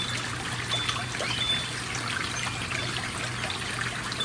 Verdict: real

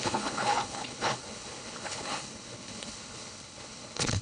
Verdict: fake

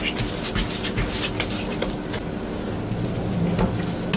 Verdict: real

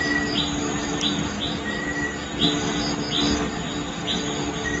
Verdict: real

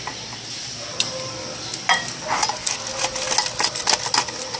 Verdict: real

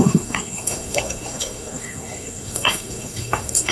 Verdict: fake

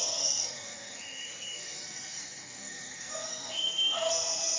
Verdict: fake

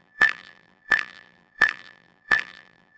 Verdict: fake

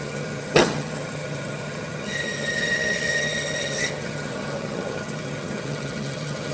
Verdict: fake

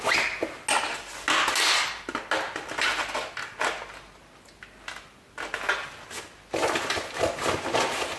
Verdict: real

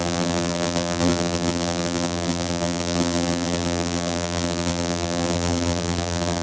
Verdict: fake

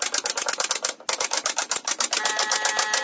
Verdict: real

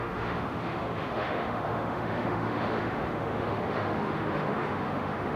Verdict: fake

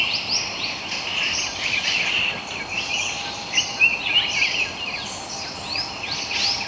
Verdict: real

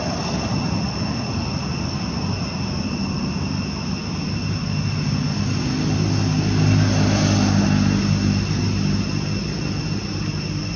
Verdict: real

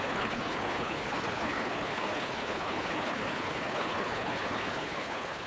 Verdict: fake